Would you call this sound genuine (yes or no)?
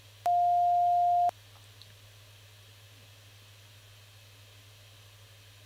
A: yes